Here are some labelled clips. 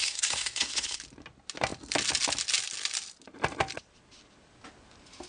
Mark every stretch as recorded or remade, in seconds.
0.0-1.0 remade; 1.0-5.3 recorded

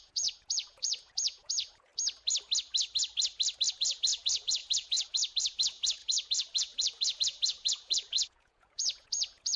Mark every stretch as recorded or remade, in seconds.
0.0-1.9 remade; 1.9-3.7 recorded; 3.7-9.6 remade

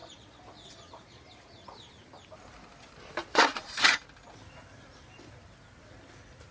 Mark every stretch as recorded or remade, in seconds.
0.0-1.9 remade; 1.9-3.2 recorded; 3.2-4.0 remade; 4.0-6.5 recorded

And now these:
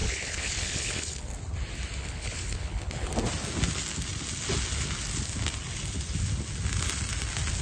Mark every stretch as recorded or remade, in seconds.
0.0-1.3 remade; 1.3-2.0 recorded; 2.0-3.1 remade; 3.1-7.6 recorded

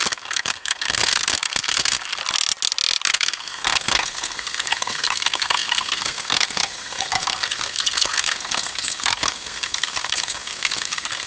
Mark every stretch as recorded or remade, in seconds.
0.0-2.2 remade; 2.2-3.1 recorded; 3.1-11.3 remade

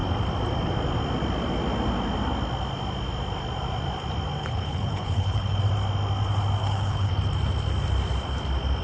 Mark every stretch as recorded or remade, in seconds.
0.0-4.4 recorded; 4.4-5.6 remade; 5.6-6.6 recorded; 6.6-7.1 remade; 7.1-8.8 recorded

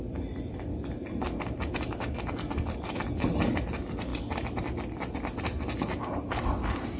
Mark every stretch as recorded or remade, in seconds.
0.0-7.0 recorded

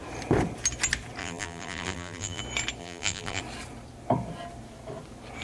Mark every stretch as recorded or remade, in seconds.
0.0-1.2 recorded; 1.2-2.4 remade; 2.4-2.8 recorded; 2.8-3.4 remade; 3.4-5.4 recorded